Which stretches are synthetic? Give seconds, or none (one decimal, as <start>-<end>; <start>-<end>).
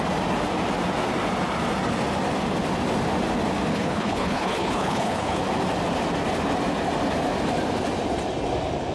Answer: 3.7-5.4